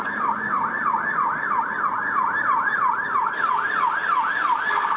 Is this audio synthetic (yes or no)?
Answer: no